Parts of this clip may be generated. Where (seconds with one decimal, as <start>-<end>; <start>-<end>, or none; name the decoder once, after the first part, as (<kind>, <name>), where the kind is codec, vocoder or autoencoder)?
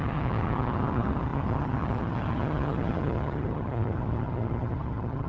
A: 0.0-5.3 (vocoder, HiFi-GAN)